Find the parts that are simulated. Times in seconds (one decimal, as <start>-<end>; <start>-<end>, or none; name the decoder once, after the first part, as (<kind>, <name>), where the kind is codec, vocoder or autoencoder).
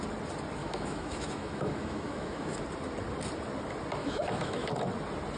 0.6-2.6 (autoencoder, DAC-VAE); 4.0-4.7